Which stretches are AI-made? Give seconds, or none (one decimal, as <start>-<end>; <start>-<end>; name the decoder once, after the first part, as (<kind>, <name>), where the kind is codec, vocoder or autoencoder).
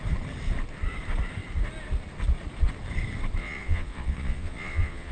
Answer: 3.4-5.1 (vocoder, Vocos)